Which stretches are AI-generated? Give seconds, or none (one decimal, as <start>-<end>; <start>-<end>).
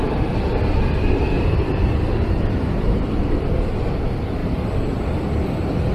0.0-5.9